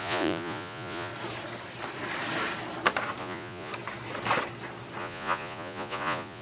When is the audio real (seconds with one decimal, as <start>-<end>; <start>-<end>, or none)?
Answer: 1.1-3.2; 3.7-5.0